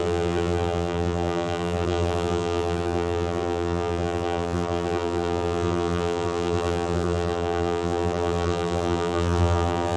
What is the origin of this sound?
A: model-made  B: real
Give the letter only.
A